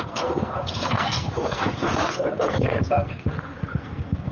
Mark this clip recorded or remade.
remade